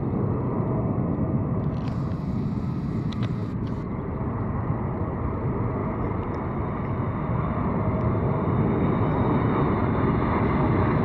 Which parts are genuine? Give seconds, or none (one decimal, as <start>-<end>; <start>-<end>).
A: 0.0-11.0